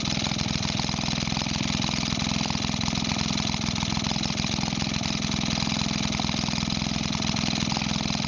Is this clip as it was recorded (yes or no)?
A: yes